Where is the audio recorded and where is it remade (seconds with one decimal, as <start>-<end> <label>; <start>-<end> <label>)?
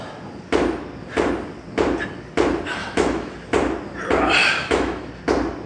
0.0-2.8 recorded; 2.8-3.3 remade; 3.3-4.4 recorded; 4.4-5.1 remade; 5.1-5.7 recorded